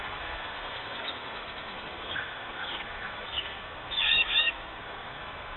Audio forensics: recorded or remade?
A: remade